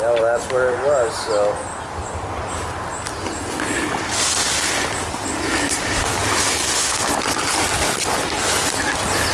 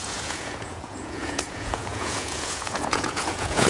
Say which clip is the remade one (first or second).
second